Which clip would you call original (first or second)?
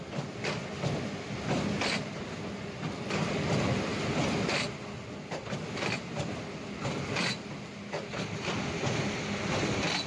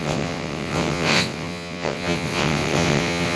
first